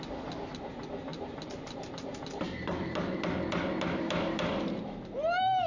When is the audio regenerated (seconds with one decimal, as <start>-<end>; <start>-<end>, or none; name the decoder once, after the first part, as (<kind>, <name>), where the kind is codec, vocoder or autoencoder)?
none